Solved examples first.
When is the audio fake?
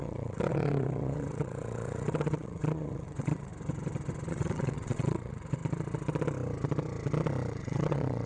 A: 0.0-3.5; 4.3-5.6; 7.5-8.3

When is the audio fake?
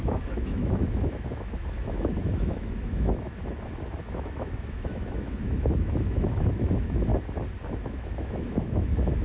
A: 0.0-3.4; 4.0-7.1; 7.7-9.2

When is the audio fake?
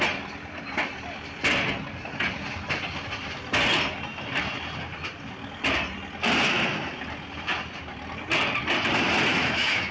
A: 9.3-9.9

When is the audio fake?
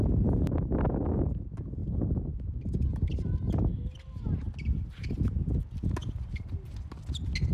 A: none